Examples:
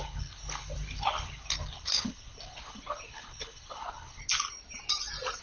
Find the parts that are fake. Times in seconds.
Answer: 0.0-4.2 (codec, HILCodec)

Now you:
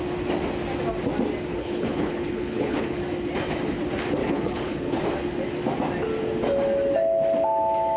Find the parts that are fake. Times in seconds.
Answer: 1.5-3.0 (codec, HILCodec); 4.2-5.0

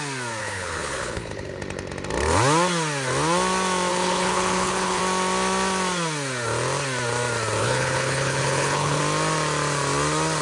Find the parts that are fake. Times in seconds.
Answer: 0.4-1.6 (codec, HILCodec); 3.9-5.0; 7.6-9.0

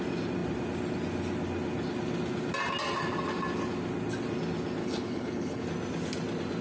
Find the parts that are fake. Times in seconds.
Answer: 4.8-5.6 (codec, HILCodec)